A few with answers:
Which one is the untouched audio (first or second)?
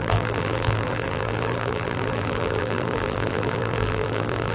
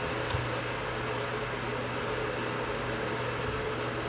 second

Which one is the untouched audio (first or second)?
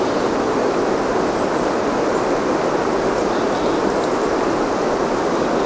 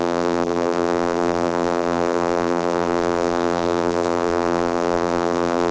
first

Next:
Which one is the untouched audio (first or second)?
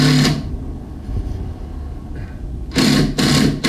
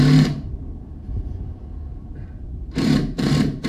first